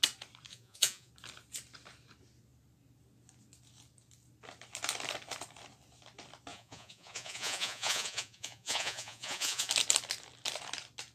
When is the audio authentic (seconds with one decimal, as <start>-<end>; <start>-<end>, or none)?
0.0-0.5; 1.1-6.5; 9.7-11.1